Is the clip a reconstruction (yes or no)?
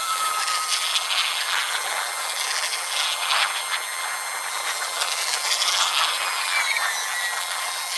yes